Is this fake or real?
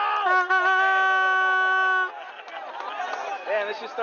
real